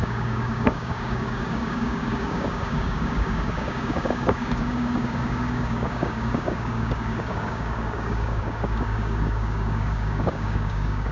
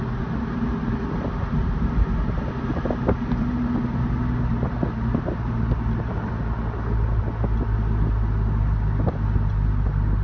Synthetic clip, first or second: first